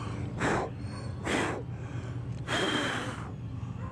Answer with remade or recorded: recorded